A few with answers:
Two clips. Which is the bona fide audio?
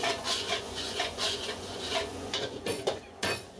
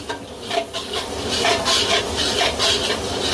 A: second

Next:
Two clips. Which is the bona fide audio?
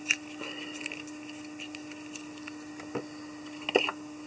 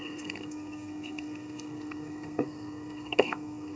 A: first